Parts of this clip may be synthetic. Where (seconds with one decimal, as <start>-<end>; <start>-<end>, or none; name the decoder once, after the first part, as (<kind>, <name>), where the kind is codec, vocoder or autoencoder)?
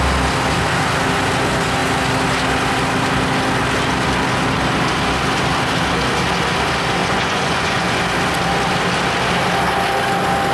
7.0-8.0 (vocoder, Vocos)